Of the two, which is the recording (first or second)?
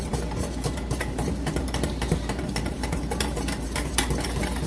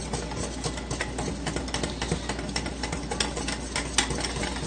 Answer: second